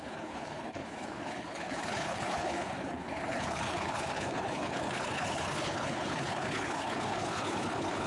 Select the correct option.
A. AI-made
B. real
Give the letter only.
A